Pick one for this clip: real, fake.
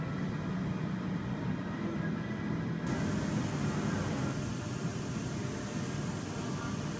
real